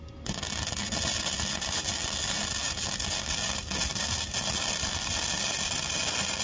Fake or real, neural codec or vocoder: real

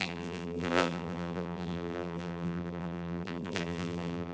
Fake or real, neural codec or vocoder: fake, vocoder, BigVGAN v2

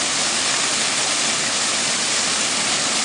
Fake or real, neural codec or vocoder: real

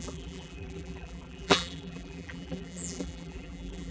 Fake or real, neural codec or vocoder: fake, vocoder, BigVGAN v2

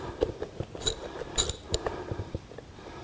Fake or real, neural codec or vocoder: fake, vocoder, BigVGAN v2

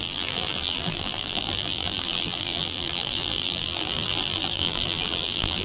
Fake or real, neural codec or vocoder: fake, vocoder, BigVGAN v2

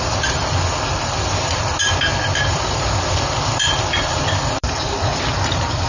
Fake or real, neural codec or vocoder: fake, vocoder, BigVGAN v2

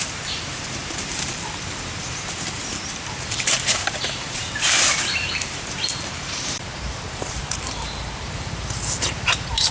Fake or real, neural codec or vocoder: fake, vocoder, BigVGAN v2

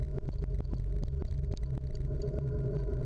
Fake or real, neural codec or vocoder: real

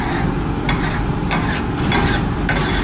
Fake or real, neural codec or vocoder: real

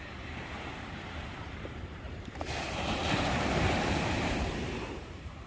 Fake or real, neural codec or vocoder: fake, vocoder, BigVGAN v2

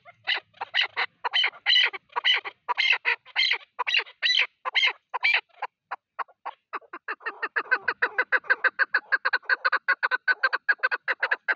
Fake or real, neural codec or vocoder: real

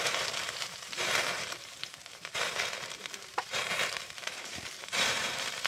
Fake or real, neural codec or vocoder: fake, vocoder, BigVGAN v2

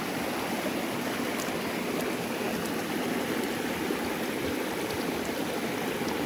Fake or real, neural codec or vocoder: real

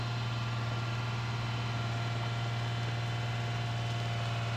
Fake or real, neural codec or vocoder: real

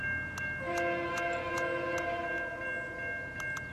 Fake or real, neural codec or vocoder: real